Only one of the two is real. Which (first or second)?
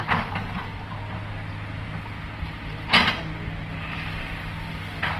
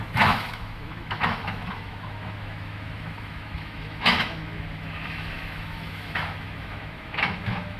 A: first